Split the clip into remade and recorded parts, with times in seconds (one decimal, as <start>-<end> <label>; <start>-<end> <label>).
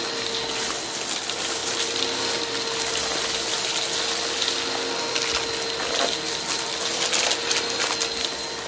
0.0-1.6 recorded; 1.6-2.2 remade; 2.2-8.7 recorded